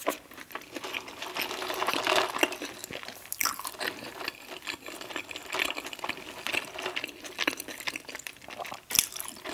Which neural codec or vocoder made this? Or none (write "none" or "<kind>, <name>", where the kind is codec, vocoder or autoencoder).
none